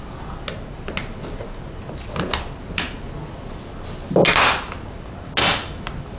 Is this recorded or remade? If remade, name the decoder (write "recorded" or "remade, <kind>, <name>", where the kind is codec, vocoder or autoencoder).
recorded